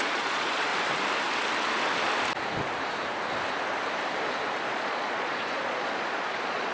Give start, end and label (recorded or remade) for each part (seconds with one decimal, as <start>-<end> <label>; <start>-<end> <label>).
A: 0.0-0.7 remade; 0.7-4.7 recorded; 4.7-6.7 remade